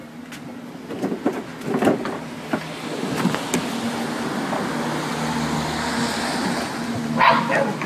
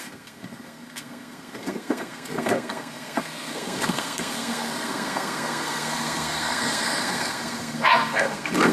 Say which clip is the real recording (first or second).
first